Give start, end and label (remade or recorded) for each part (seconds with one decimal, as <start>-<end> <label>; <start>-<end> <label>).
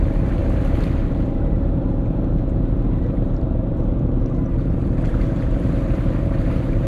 0.0-6.9 remade